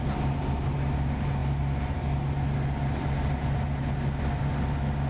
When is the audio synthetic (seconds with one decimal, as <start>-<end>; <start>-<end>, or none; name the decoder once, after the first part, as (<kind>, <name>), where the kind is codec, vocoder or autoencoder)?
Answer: none